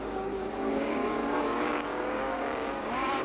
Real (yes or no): no